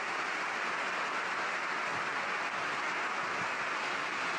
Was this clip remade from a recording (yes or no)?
no